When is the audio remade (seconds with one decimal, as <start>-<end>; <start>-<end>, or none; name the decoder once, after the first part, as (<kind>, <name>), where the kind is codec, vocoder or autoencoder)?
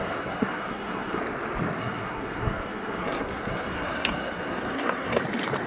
0.0-1.2 (codec, SNAC); 1.8-5.2